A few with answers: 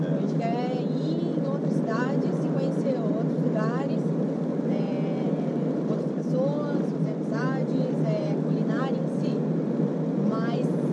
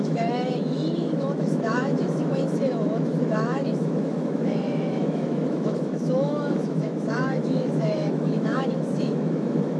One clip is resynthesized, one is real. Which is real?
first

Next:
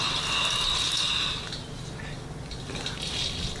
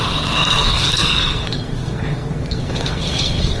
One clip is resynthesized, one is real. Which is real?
first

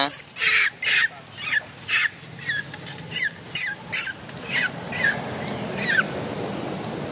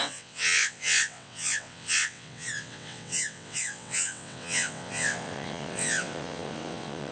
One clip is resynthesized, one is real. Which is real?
first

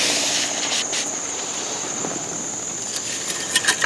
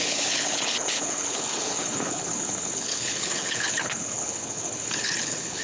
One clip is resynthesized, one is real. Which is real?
first